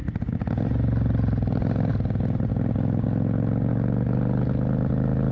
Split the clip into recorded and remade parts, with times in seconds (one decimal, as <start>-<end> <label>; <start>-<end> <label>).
0.0-5.3 recorded